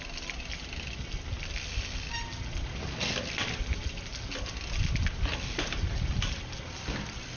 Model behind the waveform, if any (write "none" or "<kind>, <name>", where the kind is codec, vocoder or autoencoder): none